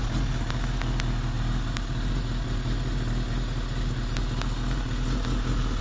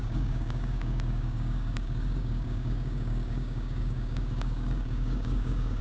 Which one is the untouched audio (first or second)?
first